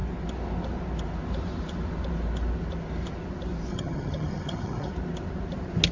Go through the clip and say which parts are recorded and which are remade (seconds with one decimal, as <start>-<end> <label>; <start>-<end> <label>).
0.0-3.7 recorded; 3.7-4.9 remade; 4.9-5.9 recorded